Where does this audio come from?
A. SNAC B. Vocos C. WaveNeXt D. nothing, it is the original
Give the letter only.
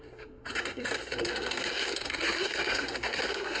A